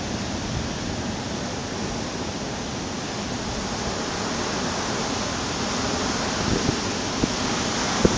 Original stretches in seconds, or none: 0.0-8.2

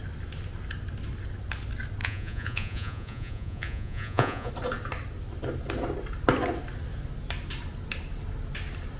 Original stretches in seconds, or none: 0.0-2.0; 4.5-9.0